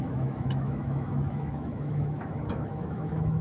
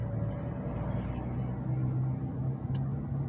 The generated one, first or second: first